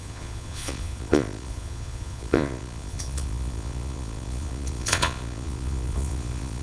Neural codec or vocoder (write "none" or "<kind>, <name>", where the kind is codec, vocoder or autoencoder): vocoder, Vocos